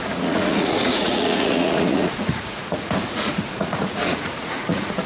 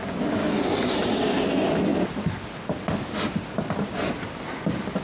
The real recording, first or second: second